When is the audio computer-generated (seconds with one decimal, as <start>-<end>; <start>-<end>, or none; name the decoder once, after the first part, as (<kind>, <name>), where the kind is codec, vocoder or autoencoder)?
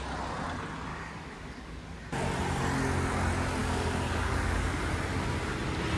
0.9-2.0 (codec, DAC); 3.6-4.8